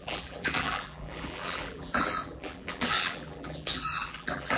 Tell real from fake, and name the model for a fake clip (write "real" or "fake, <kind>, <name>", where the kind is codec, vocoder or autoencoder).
fake, vocoder, BigVGAN v2